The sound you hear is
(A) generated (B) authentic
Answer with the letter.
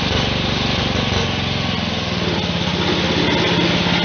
B